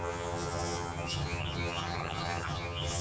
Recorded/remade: remade